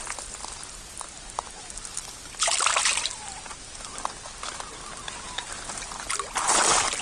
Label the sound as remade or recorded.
recorded